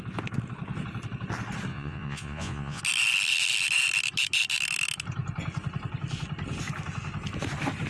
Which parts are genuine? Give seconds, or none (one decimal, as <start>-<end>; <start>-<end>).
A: 0.0-1.7; 2.8-7.9